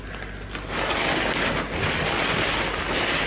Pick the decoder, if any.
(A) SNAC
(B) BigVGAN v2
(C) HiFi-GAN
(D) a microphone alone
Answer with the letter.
D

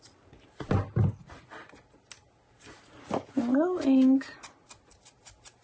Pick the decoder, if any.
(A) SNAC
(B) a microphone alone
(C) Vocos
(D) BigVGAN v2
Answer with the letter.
B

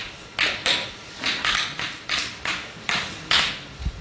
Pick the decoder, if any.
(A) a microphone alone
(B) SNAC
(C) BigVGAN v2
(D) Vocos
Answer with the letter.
A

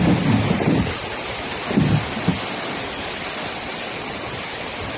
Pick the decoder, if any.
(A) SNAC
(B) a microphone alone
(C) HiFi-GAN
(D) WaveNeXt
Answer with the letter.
B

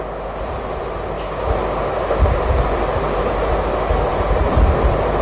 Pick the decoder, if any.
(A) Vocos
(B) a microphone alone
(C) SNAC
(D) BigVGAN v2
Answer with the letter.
B